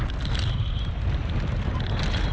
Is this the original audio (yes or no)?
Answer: yes